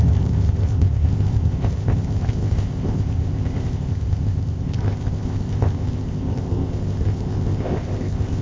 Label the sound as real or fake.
fake